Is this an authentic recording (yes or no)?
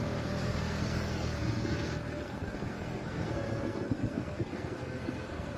no